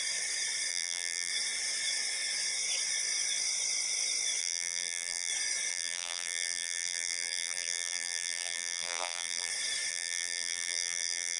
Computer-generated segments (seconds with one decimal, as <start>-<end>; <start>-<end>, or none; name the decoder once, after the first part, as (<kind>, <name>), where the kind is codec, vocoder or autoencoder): 0.7-1.3 (vocoder, BigVGAN v2); 4.4-5.3; 5.7-9.5; 9.9-11.4